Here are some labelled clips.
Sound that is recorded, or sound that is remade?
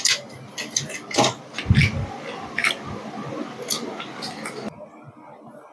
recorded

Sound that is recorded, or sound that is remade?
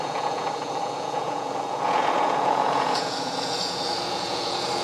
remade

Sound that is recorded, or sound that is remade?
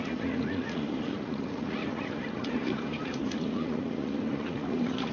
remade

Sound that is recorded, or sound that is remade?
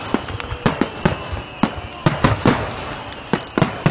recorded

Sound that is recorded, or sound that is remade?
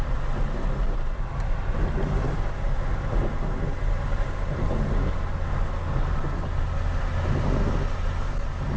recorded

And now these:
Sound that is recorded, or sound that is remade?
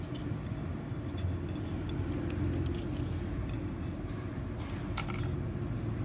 recorded